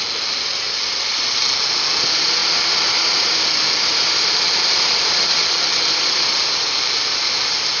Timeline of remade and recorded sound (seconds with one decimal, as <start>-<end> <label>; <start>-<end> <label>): 0.0-7.8 recorded